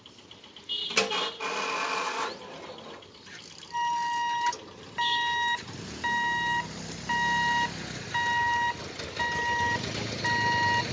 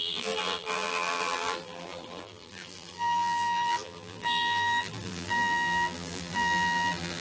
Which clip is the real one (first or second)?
first